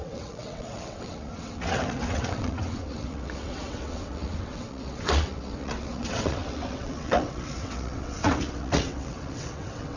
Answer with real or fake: fake